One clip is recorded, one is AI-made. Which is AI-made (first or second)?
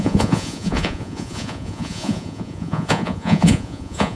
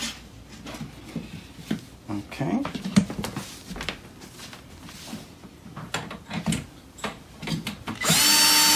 first